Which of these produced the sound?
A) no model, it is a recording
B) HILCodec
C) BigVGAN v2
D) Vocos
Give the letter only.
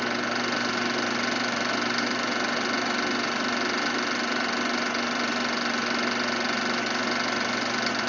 A